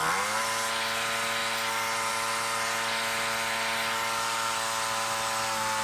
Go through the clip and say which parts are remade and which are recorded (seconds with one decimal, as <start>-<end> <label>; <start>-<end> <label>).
0.0-5.8 recorded